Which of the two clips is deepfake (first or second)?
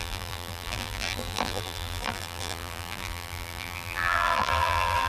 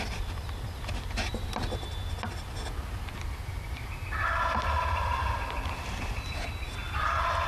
first